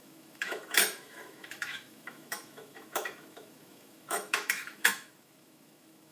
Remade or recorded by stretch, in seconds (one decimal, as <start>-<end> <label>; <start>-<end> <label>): 0.0-6.1 remade